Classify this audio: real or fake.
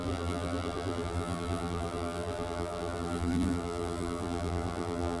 fake